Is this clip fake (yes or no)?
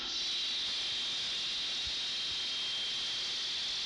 no